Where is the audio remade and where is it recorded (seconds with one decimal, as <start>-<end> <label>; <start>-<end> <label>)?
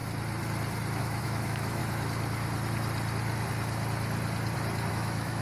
0.0-1.0 recorded; 1.0-1.8 remade; 1.8-4.9 recorded; 4.9-5.4 remade